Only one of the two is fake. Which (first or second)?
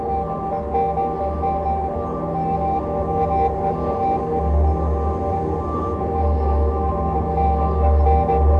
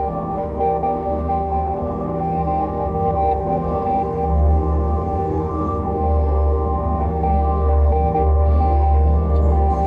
second